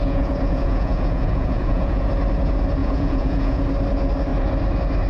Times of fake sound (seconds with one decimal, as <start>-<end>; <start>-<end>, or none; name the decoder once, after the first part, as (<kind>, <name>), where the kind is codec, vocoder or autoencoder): 0.0-2.1 (vocoder, Vocos); 2.8-3.6